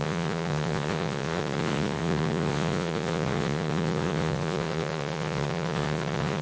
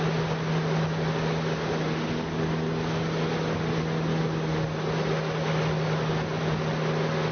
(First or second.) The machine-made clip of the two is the first